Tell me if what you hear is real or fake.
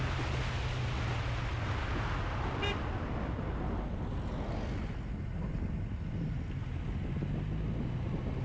real